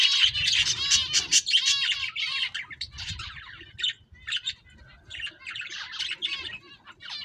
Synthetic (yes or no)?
no